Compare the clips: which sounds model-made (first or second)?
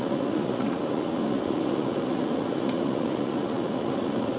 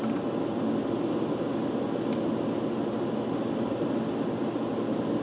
first